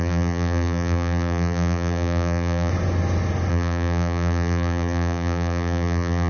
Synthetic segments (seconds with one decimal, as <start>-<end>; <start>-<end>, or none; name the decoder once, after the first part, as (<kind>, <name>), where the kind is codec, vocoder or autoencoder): 0.0-2.7 (vocoder, BigVGAN v2); 3.5-6.3